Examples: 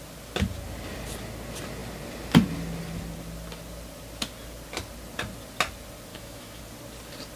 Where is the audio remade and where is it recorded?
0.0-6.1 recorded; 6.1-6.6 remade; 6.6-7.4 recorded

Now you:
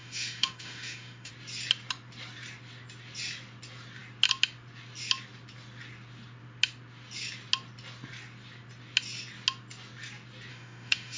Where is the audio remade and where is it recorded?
0.0-1.3 remade; 1.3-10.5 recorded; 10.5-11.2 remade

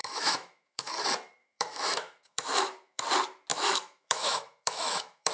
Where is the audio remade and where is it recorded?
0.0-0.9 remade; 0.9-1.4 recorded; 1.4-3.0 remade; 3.0-3.5 recorded; 3.5-5.3 remade